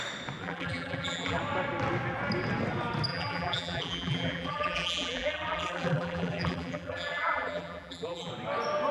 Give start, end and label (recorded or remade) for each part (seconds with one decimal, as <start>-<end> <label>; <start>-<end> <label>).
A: 0.0-0.4 recorded; 0.4-1.4 remade; 1.4-3.1 recorded; 3.1-8.3 remade; 8.3-8.9 recorded